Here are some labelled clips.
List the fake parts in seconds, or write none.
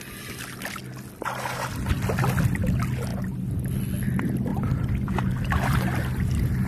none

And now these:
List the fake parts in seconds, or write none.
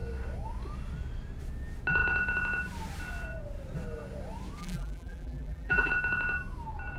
4.6-5.9 (vocoder, BigVGAN v2)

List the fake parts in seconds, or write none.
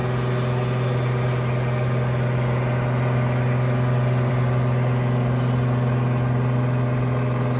none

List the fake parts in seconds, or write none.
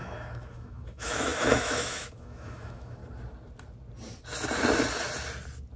0.0-3.0 (autoencoder, DAC-VAE)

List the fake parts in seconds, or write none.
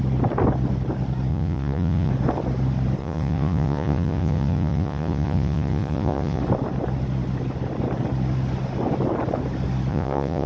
1.3-2.1 (vocoder, Vocos); 3.0-6.4; 9.9-10.5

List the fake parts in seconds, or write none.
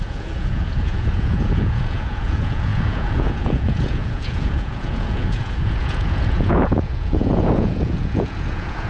0.0-8.9 (vocoder, Vocos)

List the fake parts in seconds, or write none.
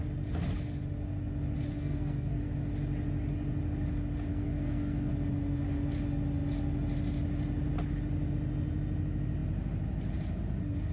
1.7-2.7 (codec, SNAC); 4.3-5.1